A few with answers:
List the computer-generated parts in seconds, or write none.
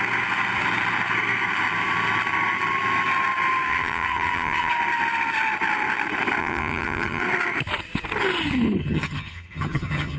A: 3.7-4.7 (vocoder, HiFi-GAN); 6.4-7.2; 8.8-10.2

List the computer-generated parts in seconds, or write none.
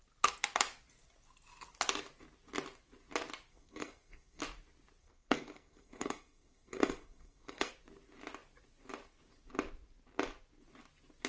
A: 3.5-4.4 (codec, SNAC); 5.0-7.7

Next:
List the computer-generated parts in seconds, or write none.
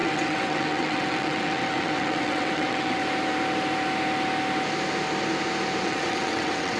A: 0.0-3.0 (vocoder, WaveNeXt); 5.8-6.8